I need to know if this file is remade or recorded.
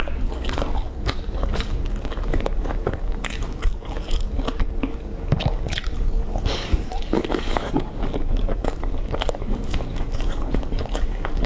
remade